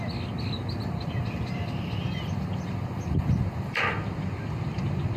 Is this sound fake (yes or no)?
yes